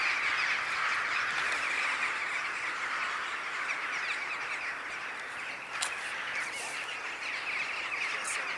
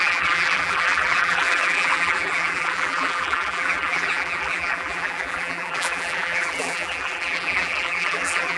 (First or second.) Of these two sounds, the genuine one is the first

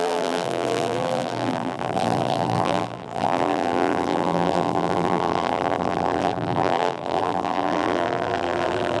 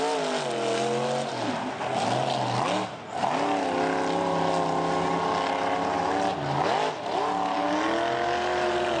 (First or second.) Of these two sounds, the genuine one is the second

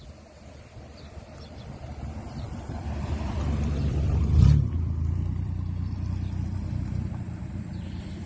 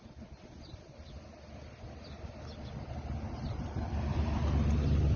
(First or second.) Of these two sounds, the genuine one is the second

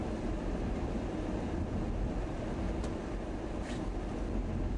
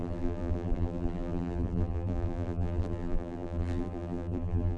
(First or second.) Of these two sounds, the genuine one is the first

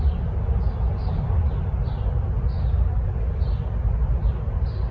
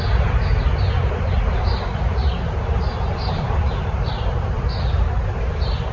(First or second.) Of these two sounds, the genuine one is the first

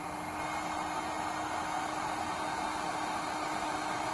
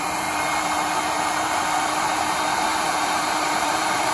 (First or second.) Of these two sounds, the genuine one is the first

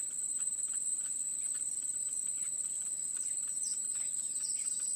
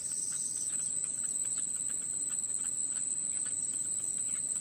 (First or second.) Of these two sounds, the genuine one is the second